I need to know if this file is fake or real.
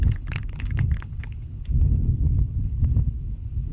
fake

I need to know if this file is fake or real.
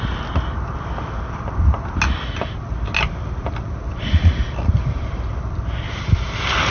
real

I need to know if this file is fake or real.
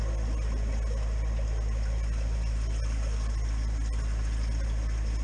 real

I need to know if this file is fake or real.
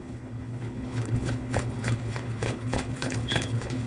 fake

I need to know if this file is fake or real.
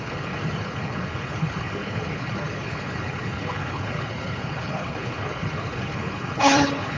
fake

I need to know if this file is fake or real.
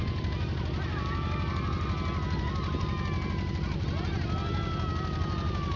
real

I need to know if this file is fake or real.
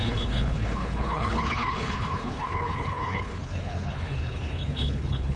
fake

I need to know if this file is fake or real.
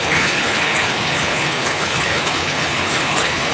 fake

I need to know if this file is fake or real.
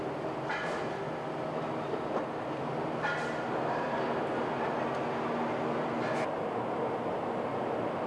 real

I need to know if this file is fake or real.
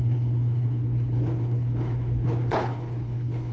fake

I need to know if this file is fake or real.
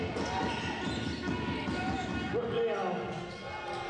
real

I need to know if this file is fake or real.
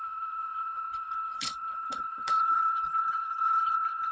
fake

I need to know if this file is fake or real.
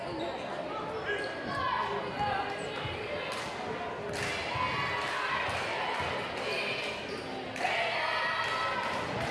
real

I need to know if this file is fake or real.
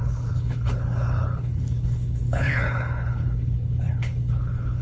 fake